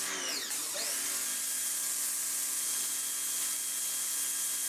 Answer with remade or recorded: recorded